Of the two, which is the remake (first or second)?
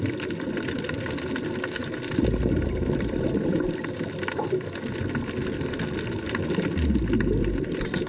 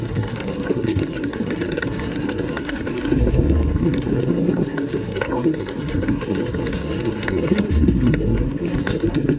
second